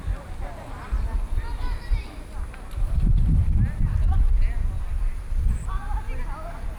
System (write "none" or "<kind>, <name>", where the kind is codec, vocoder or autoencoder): none